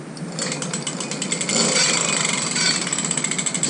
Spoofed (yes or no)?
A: no